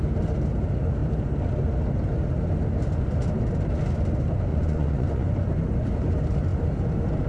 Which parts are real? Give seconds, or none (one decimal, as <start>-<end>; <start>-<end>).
0.0-4.5; 5.3-7.3